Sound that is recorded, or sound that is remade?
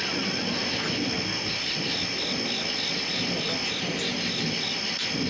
recorded